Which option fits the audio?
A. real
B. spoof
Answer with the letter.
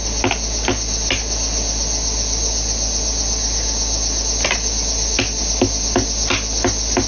A